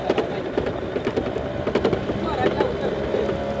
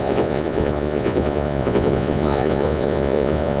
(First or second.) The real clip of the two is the first